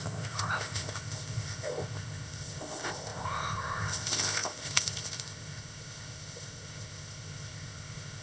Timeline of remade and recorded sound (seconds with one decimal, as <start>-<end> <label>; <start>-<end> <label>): 0.0-8.2 remade